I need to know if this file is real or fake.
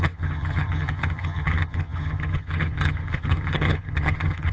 fake